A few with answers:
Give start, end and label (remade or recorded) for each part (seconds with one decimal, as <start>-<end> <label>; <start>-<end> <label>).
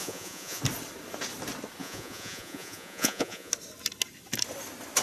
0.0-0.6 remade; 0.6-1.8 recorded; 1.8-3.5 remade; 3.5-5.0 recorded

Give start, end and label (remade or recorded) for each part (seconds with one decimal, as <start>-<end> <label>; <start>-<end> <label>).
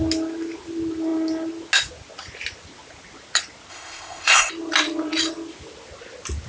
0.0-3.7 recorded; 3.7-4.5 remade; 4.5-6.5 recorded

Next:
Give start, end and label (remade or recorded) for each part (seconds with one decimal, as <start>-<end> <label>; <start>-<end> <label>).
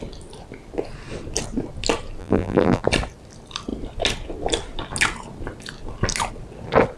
0.0-2.2 recorded; 2.2-2.8 remade; 2.8-7.0 recorded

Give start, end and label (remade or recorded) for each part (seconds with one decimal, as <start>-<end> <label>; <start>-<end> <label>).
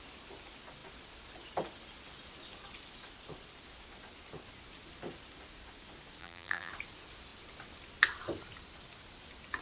0.0-6.2 recorded; 6.2-6.7 remade; 6.7-9.6 recorded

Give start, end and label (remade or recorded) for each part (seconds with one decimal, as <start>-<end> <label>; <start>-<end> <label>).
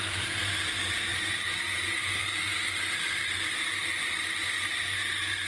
0.0-3.2 recorded; 3.2-3.8 remade; 3.8-5.5 recorded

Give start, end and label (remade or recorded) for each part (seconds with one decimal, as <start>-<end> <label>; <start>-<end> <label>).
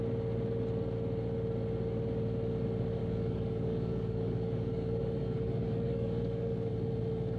0.0-3.0 recorded; 3.0-6.7 remade; 6.7-7.4 recorded